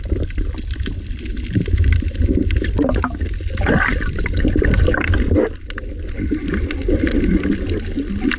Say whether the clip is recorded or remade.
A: recorded